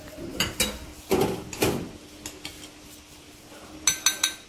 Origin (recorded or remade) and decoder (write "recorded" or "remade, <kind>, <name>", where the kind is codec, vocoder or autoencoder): recorded